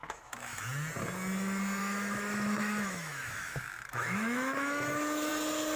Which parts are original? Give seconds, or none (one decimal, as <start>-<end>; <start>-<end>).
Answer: 0.6-1.8; 5.3-5.8